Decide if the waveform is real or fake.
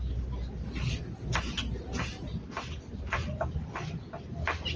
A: real